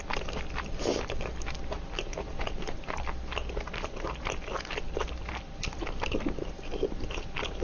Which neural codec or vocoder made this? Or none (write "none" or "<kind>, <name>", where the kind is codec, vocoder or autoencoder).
none